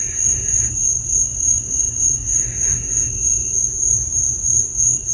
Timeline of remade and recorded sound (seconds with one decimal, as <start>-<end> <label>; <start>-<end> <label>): 0.0-0.9 recorded; 0.9-2.0 remade; 2.0-5.1 recorded

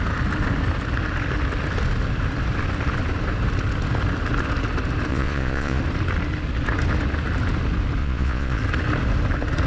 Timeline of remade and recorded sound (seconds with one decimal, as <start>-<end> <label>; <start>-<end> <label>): 0.0-5.1 recorded; 5.1-5.8 remade; 5.8-8.0 recorded; 8.0-8.6 remade; 8.6-9.7 recorded

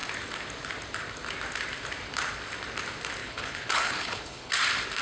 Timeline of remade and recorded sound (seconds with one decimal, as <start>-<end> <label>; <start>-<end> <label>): 0.0-3.2 recorded; 3.2-4.5 remade; 4.5-5.0 recorded

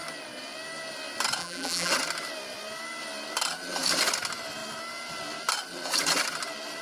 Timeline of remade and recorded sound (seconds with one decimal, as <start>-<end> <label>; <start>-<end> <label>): 0.0-1.4 recorded; 1.4-1.9 remade; 1.9-6.8 recorded

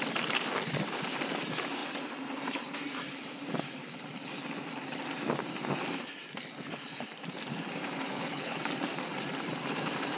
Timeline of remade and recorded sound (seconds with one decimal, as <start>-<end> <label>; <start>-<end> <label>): 0.0-8.1 recorded; 8.1-8.6 remade; 8.6-10.2 recorded

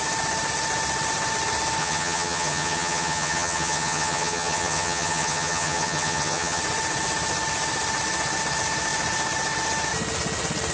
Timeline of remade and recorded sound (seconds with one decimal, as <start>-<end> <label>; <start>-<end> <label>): 0.0-1.8 recorded; 1.8-6.6 remade; 6.6-10.7 recorded